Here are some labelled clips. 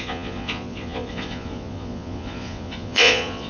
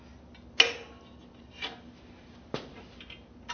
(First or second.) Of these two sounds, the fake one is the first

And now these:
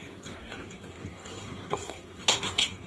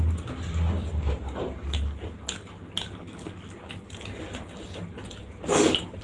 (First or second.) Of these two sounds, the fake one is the first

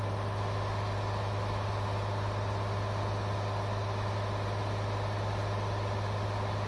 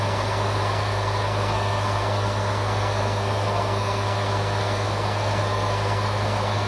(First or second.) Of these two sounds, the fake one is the second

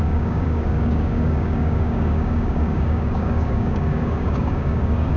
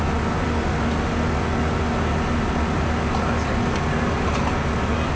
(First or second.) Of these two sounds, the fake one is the first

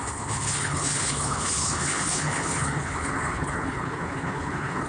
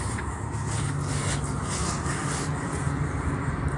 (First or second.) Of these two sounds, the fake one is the first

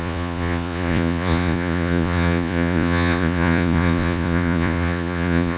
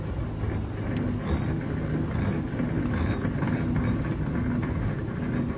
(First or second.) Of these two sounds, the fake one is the first